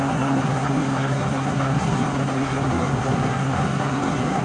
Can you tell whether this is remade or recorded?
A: remade